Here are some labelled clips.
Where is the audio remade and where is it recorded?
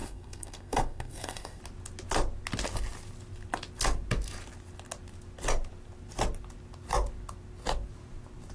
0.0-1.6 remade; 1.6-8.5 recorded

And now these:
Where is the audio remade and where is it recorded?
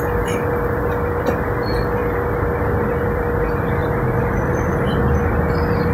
0.0-3.8 recorded; 3.8-5.0 remade; 5.0-5.9 recorded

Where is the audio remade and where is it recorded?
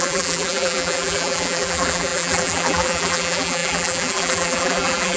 0.0-5.2 remade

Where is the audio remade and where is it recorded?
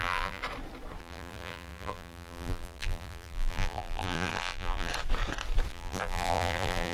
0.0-0.4 remade; 0.4-1.0 recorded; 1.0-4.9 remade; 4.9-5.7 recorded; 5.7-6.9 remade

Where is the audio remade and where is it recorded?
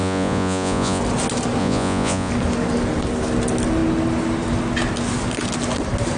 0.0-1.0 remade; 1.0-1.6 recorded; 1.6-2.3 remade; 2.3-6.2 recorded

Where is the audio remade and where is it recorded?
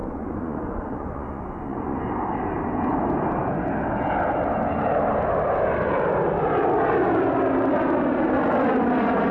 0.0-2.0 remade; 2.0-9.3 recorded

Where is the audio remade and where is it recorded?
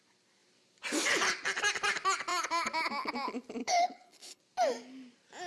0.0-3.6 recorded; 3.6-4.4 remade; 4.4-5.5 recorded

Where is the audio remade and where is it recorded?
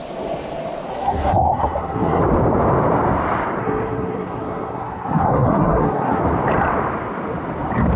0.0-0.9 recorded; 0.9-2.2 remade; 2.2-3.6 recorded; 3.6-6.2 remade; 6.2-8.0 recorded